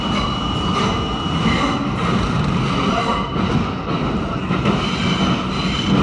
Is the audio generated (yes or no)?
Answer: no